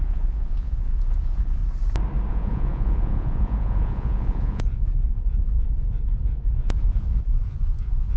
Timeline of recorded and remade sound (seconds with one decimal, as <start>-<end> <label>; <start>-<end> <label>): 0.0-1.6 remade; 1.6-2.3 recorded; 2.3-8.2 remade